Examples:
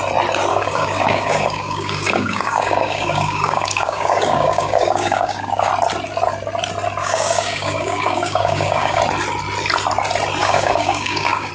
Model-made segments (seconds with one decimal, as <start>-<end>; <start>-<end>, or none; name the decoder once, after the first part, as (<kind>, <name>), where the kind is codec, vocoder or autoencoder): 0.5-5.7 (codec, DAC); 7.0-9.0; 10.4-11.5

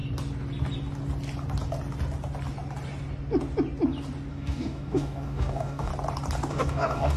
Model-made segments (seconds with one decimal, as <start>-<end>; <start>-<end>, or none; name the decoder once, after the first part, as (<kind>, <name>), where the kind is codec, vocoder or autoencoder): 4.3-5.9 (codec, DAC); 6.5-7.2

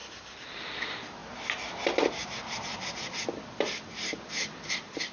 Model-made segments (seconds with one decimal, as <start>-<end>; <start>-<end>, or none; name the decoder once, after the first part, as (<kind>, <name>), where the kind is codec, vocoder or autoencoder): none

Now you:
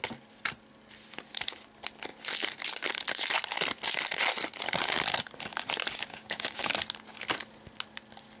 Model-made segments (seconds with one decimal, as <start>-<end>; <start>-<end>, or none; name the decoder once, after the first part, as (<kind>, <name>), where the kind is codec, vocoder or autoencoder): 6.1-6.7 (codec, DAC)

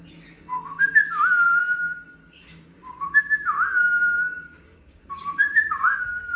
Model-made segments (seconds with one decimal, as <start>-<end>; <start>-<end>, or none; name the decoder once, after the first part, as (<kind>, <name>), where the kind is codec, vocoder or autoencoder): 2.2-6.0 (codec, DAC)

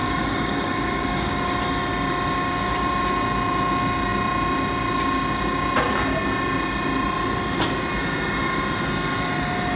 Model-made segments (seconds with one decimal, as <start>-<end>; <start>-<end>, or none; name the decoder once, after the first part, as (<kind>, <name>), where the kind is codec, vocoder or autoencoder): 0.0-1.5 (codec, DAC)